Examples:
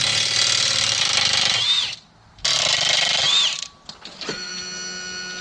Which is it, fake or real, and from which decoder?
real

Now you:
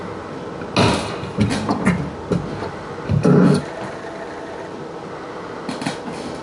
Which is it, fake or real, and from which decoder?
real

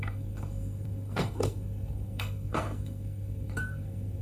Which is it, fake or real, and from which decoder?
fake, codec, SNAC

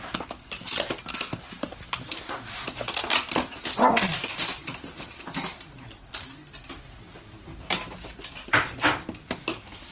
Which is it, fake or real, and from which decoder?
real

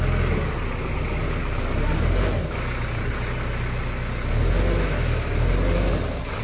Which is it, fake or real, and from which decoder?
real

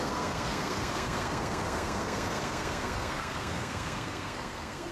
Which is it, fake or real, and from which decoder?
fake, codec, SNAC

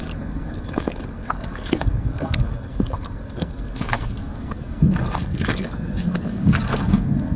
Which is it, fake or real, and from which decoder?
fake, codec, SNAC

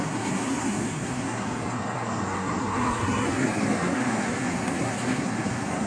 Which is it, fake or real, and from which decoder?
fake, codec, SNAC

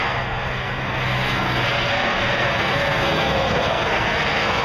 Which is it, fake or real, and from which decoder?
fake, codec, SNAC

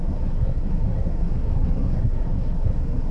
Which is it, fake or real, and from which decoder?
fake, codec, SNAC